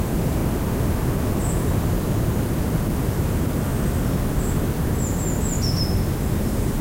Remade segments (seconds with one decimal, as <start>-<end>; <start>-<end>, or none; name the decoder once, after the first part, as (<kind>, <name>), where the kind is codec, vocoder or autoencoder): 0.0-0.4 (vocoder, BigVGAN v2); 3.0-3.7; 6.2-6.8